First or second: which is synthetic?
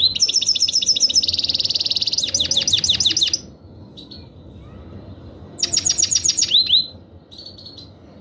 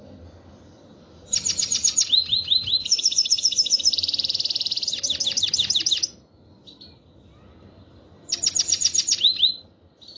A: second